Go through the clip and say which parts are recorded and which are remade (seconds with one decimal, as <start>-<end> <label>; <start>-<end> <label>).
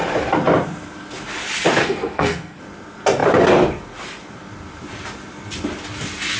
0.0-1.8 recorded; 1.8-2.6 remade; 2.6-6.4 recorded